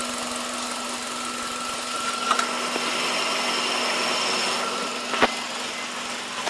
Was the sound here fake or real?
real